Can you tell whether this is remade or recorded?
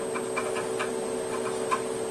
recorded